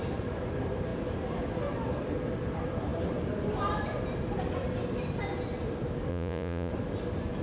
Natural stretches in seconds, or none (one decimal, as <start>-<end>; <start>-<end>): 0.0-6.1; 6.7-7.4